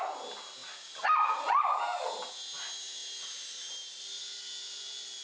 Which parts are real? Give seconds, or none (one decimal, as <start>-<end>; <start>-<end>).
0.0-5.2